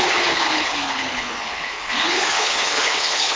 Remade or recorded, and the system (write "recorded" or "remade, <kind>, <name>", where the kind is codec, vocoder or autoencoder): remade, codec, HILCodec